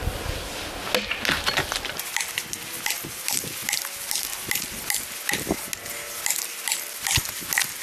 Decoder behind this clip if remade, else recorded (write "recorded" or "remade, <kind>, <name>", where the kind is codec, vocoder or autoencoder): recorded